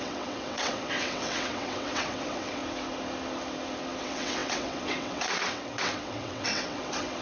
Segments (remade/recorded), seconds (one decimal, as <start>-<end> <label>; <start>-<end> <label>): 0.0-2.6 remade; 2.6-4.0 recorded; 4.0-7.2 remade